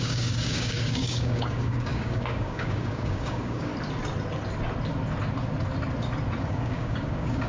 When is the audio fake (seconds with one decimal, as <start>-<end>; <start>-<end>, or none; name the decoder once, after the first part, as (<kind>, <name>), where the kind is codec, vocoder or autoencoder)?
0.0-3.7 (codec, DAC); 6.4-7.5

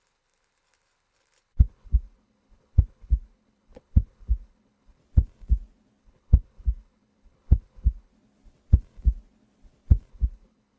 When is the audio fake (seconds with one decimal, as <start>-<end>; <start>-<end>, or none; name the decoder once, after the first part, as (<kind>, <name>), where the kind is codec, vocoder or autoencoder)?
0.0-5.0 (codec, HILCodec); 6.0-8.1; 10.1-10.8

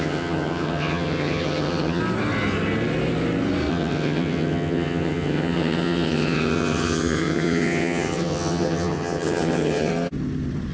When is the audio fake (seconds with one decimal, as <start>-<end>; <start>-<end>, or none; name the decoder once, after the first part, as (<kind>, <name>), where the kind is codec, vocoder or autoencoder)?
0.0-2.0 (vocoder, HiFi-GAN); 3.7-9.9

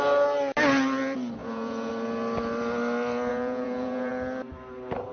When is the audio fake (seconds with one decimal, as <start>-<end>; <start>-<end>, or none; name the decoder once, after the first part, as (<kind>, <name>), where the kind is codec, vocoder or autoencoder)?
1.4-1.9 (vocoder, Vocos); 3.3-4.1

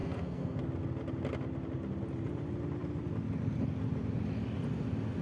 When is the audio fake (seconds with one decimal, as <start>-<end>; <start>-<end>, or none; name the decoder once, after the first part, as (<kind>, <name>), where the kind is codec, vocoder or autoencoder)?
0.0-0.6 (codec, SNAC)